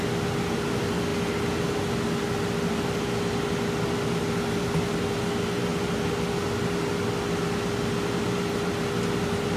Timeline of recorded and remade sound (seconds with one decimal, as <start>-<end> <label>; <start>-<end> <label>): 0.0-9.6 recorded